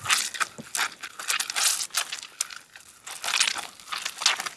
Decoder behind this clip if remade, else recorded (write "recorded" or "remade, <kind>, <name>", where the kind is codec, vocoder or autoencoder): recorded